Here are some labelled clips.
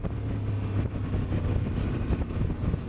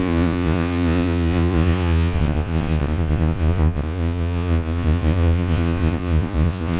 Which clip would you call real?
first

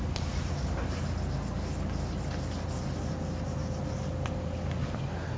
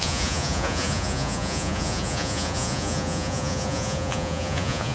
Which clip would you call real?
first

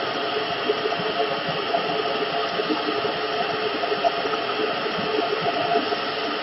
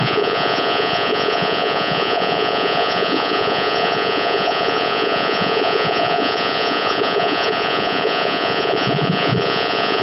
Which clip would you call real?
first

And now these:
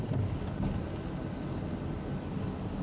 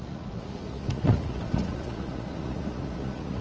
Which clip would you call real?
first